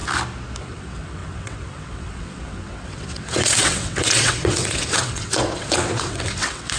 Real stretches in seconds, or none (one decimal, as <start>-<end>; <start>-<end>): 0.0-0.6